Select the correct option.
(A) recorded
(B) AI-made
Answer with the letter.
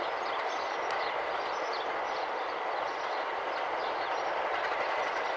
A